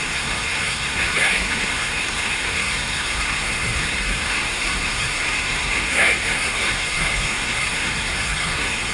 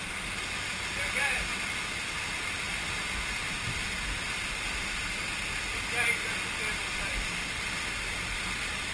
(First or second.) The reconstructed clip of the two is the first